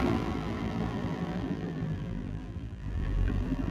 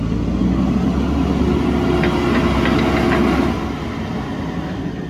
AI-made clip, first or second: first